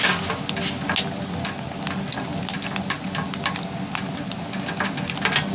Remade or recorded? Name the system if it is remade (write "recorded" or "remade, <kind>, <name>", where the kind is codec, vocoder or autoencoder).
recorded